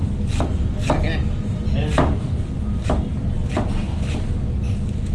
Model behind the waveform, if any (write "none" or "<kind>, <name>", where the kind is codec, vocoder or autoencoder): none